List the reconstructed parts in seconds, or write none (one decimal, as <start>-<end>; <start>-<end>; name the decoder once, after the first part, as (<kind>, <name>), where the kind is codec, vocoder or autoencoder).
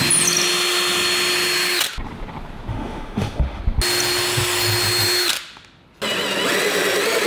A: 2.7-3.6 (autoencoder, DAC-VAE)